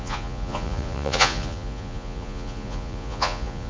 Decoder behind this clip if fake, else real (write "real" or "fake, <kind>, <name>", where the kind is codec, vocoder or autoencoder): fake, vocoder, Vocos